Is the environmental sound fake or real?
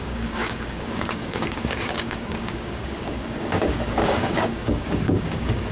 fake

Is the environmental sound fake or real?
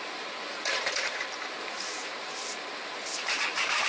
fake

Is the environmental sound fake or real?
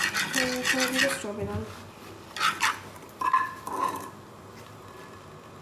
real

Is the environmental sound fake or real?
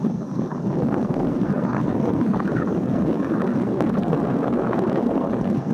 fake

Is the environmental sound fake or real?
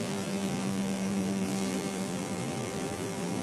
fake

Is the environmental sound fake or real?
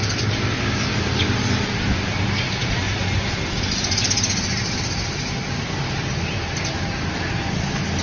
real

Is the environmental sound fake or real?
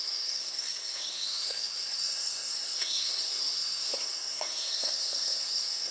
fake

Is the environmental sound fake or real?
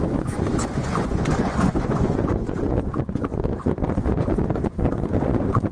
fake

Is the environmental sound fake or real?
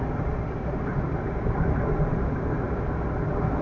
real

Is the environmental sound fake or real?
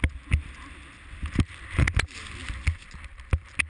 real